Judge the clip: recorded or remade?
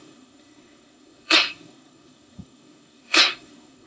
remade